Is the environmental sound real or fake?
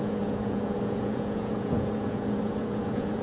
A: fake